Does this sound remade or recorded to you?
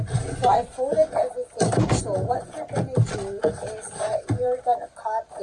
recorded